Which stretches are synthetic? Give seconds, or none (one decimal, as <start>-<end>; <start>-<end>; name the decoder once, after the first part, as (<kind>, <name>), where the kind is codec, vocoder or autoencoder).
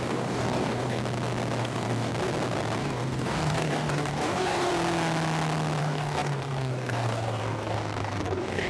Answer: 0.0-1.0 (codec, DAC); 1.6-2.1; 2.8-4.7; 5.8-8.7